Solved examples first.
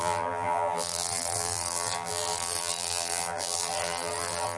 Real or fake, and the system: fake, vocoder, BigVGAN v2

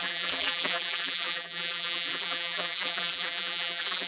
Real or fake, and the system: fake, vocoder, BigVGAN v2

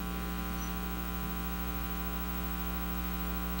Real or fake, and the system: real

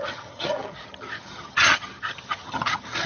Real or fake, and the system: fake, vocoder, HiFi-GAN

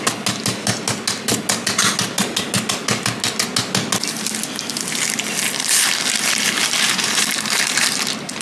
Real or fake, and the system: real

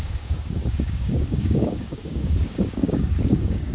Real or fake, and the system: fake, codec, DAC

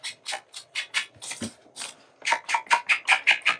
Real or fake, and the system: real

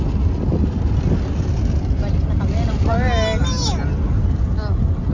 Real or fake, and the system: real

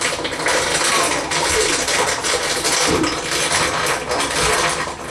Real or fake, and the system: real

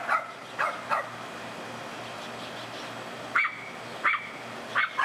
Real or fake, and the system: real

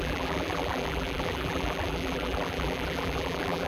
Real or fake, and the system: fake, vocoder, BigVGAN v2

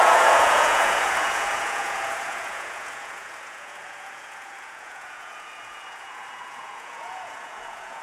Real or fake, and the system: fake, vocoder, Vocos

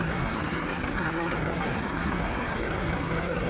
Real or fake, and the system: fake, codec, SNAC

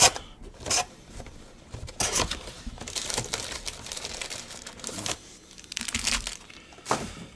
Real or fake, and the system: real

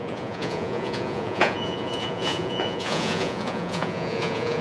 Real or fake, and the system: fake, vocoder, Vocos